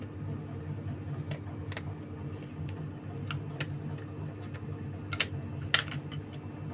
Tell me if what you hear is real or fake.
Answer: real